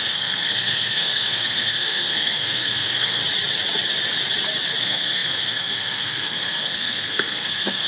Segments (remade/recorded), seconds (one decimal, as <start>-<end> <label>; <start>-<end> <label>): 0.0-3.2 remade; 3.2-4.8 recorded; 4.8-7.9 remade